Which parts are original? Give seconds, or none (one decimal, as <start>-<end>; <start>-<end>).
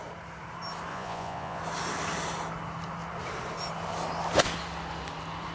0.0-0.9; 1.6-5.5